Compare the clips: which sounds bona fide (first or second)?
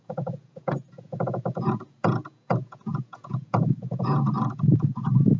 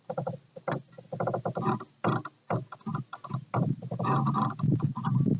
second